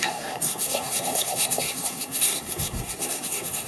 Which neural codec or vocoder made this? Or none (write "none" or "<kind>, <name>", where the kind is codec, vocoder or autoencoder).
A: codec, SNAC